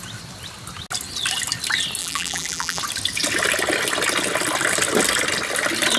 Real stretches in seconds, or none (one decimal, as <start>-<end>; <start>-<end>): 0.0-2.0; 2.8-6.0